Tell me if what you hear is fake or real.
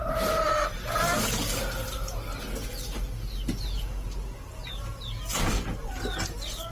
real